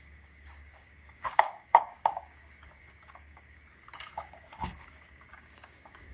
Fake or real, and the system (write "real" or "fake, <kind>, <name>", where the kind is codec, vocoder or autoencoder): fake, codec, DAC